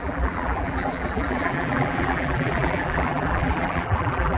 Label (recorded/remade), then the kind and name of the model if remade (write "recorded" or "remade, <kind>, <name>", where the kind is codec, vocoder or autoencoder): remade, vocoder, BigVGAN v2